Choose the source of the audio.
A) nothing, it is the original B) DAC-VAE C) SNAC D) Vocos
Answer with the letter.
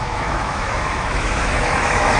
B